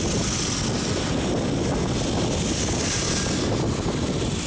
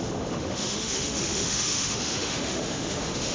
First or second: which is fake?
second